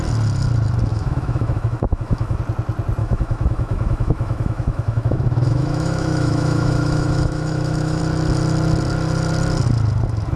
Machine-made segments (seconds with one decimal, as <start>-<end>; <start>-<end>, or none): 0.9-2.4; 3.0-8.0